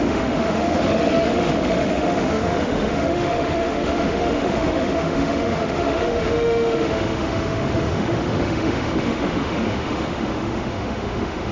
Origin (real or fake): fake